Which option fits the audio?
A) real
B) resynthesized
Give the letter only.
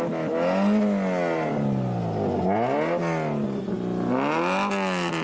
A